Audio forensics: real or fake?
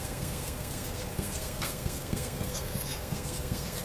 fake